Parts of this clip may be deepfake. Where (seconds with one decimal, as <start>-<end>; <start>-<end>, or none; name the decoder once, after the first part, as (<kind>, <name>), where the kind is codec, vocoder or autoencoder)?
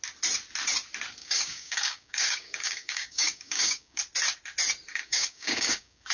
1.2-4.0 (codec, DAC); 4.9-6.1